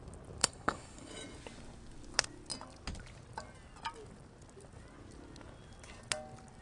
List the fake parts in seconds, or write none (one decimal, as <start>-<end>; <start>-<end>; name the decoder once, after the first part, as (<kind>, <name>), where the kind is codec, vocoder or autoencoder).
0.4-1.1 (codec, HILCodec)